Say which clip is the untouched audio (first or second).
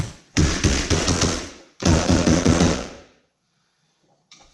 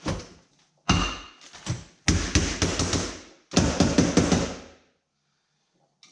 second